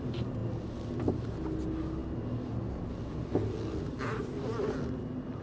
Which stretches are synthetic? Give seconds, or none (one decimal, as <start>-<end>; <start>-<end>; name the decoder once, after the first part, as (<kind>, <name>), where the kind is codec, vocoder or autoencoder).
none